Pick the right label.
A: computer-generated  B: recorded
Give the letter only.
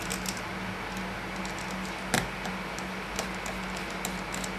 B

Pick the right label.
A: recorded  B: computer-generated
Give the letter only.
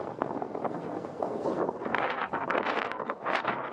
B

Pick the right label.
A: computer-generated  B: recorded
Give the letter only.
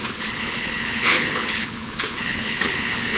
A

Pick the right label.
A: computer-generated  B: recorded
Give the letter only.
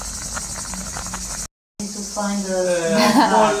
B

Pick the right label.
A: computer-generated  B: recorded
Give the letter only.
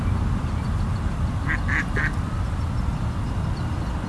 B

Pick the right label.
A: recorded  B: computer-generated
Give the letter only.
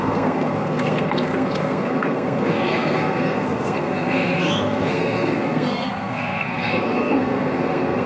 B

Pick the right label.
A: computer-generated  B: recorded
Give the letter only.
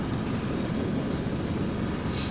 B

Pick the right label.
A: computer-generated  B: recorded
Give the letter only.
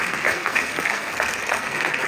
A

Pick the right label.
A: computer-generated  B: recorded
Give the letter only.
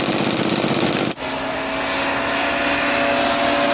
B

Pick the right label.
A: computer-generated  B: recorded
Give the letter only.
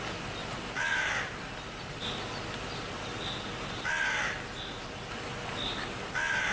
B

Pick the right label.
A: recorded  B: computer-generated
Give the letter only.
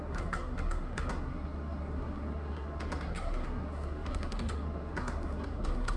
B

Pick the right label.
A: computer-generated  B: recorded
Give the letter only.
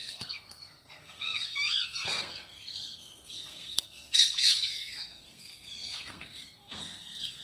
A